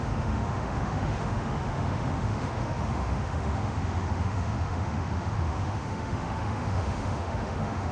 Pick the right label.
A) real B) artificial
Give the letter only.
B